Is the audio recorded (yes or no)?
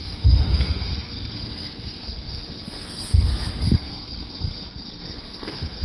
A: no